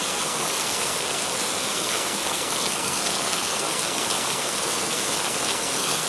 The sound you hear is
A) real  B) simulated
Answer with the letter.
B